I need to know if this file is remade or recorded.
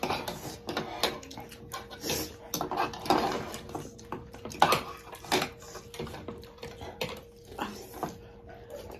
recorded